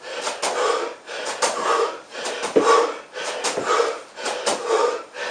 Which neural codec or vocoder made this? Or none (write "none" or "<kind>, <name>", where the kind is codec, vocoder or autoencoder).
none